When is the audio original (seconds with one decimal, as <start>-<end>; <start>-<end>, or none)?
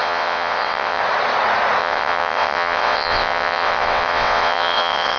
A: 1.0-1.8